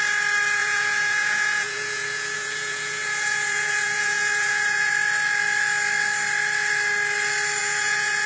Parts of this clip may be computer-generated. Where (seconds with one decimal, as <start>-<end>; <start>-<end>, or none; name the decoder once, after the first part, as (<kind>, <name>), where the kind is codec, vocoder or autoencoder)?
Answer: 0.6-4.9 (vocoder, Vocos); 7.6-8.3